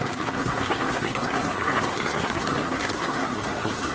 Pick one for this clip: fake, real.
fake